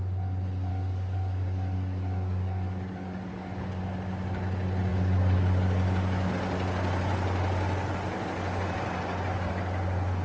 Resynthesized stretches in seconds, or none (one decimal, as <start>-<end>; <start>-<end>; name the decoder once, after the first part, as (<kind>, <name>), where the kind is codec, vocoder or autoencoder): 0.7-3.9 (codec, DAC); 4.9-6.3